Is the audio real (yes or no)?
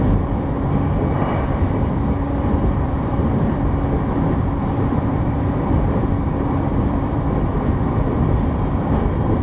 no